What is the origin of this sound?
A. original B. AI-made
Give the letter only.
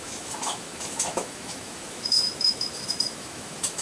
B